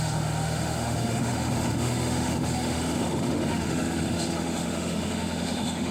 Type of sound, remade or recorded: remade